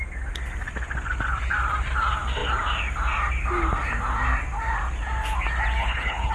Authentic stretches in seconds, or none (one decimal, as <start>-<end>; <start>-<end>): 0.0-5.8